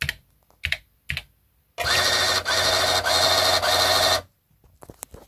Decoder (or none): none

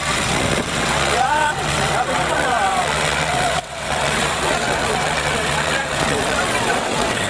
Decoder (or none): vocoder, WaveNeXt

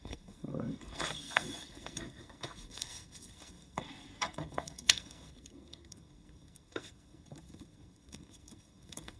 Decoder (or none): codec, SNAC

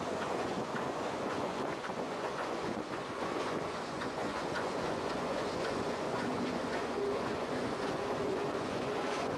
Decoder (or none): vocoder, Vocos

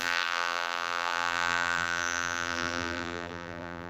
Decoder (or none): vocoder, BigVGAN v2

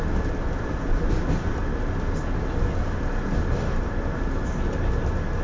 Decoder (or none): none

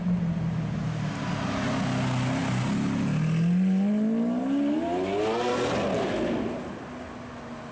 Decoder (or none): none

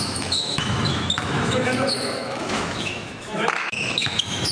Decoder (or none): autoencoder, DAC-VAE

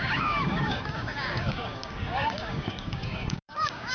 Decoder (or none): codec, DAC